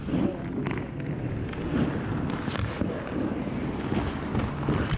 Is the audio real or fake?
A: real